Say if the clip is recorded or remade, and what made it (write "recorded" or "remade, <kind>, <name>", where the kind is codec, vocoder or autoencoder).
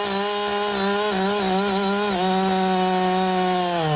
recorded